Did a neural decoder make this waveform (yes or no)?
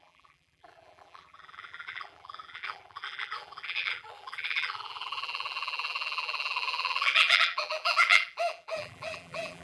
yes